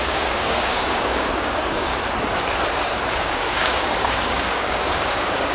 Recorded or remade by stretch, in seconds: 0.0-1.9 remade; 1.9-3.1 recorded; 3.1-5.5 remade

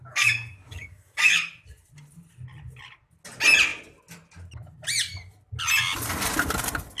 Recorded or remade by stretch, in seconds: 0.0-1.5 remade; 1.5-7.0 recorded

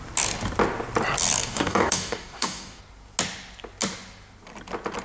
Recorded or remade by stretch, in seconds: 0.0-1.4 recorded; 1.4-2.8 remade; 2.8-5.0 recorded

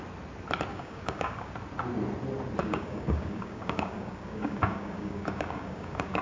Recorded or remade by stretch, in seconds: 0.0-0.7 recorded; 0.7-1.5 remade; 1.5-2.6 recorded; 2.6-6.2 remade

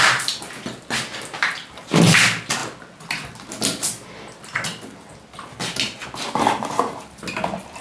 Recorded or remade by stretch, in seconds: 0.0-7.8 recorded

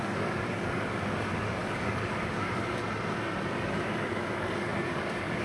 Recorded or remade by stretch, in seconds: 0.0-2.8 remade; 2.8-3.7 recorded; 3.7-5.4 remade

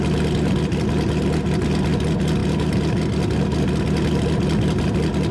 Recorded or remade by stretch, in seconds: 0.0-5.3 recorded

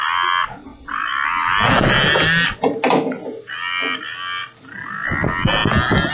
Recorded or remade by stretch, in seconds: 0.0-6.1 recorded